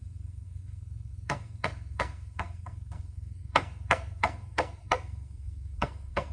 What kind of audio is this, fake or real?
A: fake